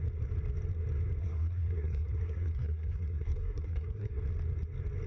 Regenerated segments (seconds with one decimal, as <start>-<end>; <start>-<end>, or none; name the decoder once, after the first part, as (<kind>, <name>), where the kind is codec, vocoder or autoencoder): 1.2-4.2 (codec, SNAC)